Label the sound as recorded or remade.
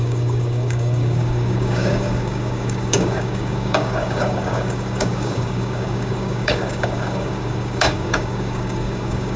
remade